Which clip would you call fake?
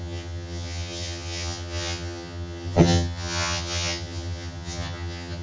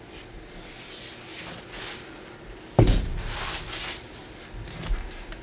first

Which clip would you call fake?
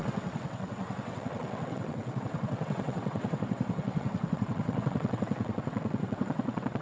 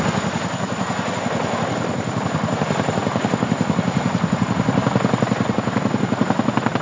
first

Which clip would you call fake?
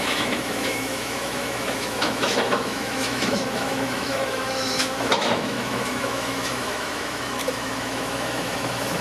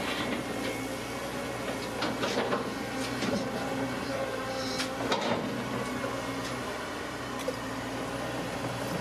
first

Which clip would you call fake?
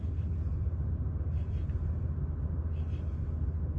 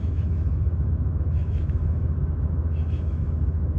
second